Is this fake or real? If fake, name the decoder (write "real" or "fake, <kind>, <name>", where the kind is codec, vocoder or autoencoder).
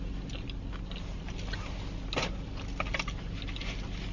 real